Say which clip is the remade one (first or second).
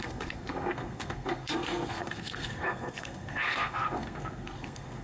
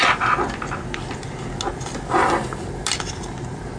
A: first